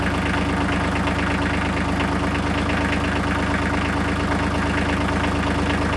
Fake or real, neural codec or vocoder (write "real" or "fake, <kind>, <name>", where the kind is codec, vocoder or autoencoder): real